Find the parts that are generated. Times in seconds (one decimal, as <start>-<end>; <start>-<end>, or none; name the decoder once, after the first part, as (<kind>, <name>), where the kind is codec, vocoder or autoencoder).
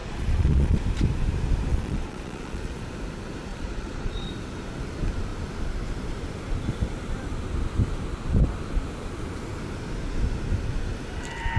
0.0-0.8 (vocoder, Vocos); 1.7-2.8; 3.5-4.3